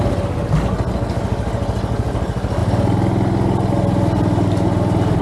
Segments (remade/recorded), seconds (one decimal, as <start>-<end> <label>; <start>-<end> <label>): 0.0-5.2 recorded